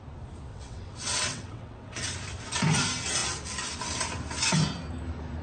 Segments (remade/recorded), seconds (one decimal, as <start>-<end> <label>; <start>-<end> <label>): 0.0-0.5 recorded; 0.5-2.1 remade; 2.1-5.4 recorded